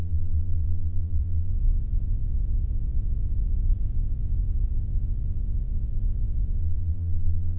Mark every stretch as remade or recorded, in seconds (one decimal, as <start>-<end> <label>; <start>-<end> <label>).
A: 0.0-1.5 remade; 1.5-6.6 recorded; 6.6-7.6 remade

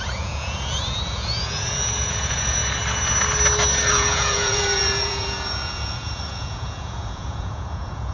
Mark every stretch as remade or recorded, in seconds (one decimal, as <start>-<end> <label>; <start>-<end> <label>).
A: 0.0-2.6 remade; 2.6-3.9 recorded; 3.9-8.1 remade

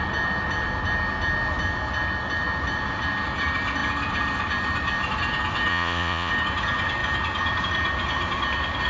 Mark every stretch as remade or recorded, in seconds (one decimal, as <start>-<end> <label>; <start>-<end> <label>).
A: 0.0-5.7 recorded; 5.7-6.3 remade; 6.3-8.9 recorded

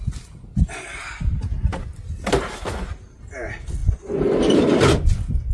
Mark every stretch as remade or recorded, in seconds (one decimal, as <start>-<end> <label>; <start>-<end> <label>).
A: 0.0-5.5 recorded

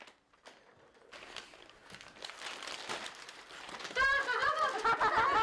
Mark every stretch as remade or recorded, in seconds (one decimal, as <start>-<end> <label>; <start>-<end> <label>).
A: 0.0-5.4 recorded

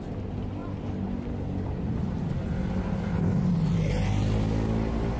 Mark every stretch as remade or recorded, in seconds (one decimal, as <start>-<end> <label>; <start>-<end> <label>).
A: 0.0-5.2 recorded